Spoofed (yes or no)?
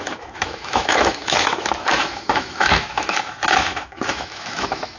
yes